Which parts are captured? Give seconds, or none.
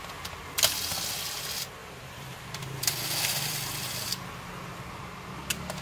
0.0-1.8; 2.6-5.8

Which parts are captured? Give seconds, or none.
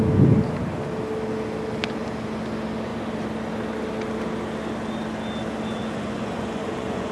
0.0-5.8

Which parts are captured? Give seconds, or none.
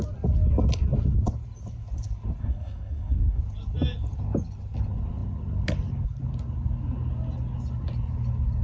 0.0-2.4; 3.4-8.6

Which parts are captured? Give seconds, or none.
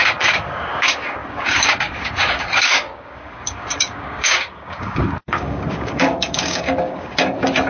none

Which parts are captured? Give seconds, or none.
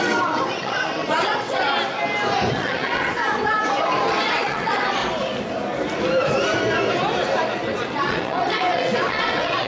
1.6-2.5; 3.2-4.1; 5.0-7.8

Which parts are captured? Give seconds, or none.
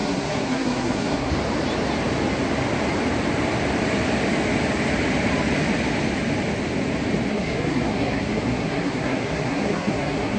1.3-7.3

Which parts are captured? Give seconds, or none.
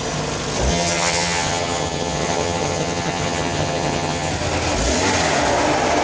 0.0-0.7; 4.3-6.0